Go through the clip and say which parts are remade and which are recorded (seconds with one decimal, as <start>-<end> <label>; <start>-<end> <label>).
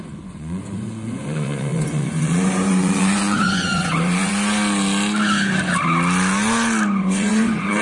0.0-4.3 remade; 4.3-7.0 recorded; 7.0-7.8 remade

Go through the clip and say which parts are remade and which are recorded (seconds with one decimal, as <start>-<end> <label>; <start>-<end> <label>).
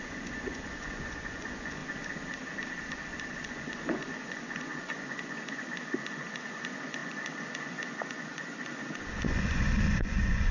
0.0-1.8 remade; 1.8-3.3 recorded; 3.3-10.5 remade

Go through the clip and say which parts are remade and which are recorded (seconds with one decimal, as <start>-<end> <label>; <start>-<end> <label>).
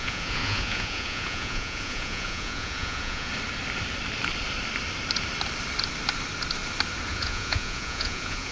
0.0-3.3 remade; 3.3-7.1 recorded; 7.1-8.5 remade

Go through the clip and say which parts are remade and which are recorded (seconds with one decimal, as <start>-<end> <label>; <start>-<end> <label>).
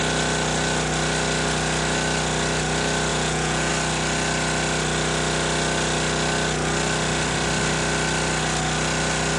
0.0-3.1 recorded; 3.1-3.7 remade; 3.7-9.4 recorded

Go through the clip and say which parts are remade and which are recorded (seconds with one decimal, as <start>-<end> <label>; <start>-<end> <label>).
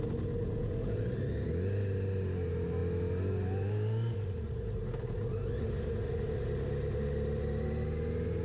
0.0-0.4 recorded; 0.4-1.0 remade; 1.0-8.4 recorded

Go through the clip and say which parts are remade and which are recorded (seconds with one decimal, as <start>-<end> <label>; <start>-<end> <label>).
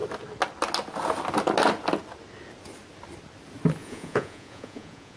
0.0-3.8 recorded; 3.8-5.2 remade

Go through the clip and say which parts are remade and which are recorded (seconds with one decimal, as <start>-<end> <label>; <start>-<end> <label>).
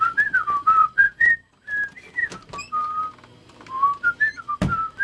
0.0-0.8 recorded; 0.8-1.3 remade; 1.3-5.0 recorded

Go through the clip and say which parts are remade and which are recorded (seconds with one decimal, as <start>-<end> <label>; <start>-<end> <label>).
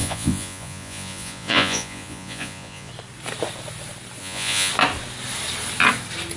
0.0-2.9 remade; 2.9-4.2 recorded; 4.2-4.7 remade; 4.7-6.4 recorded